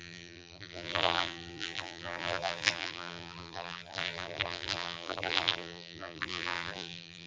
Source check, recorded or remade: remade